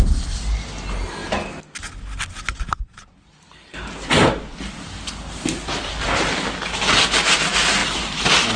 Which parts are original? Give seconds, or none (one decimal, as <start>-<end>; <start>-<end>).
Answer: 0.0-8.6